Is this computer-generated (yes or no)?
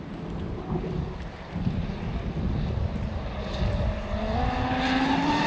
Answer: no